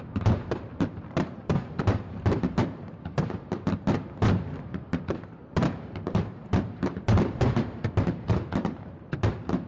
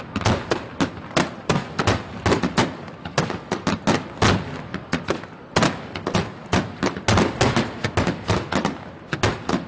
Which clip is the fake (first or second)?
first